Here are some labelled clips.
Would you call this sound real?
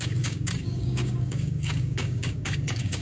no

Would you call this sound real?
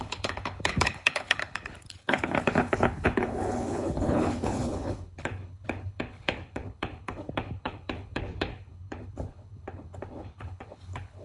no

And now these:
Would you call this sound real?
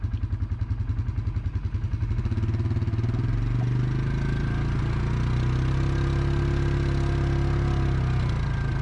yes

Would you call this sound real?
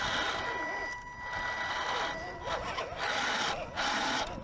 yes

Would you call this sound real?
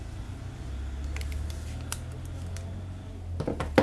yes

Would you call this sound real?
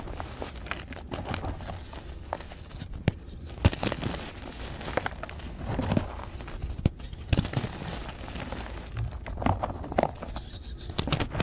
yes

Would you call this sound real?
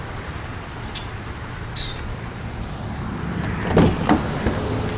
yes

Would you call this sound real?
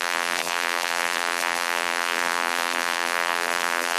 no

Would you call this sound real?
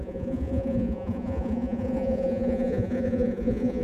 no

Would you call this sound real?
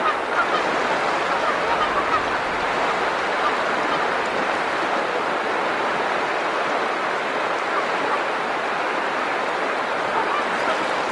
yes